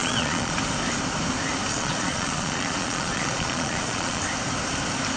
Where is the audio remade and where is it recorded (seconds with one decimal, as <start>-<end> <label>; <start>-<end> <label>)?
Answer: 0.0-0.6 remade; 0.6-1.7 recorded; 1.7-4.2 remade; 4.2-5.2 recorded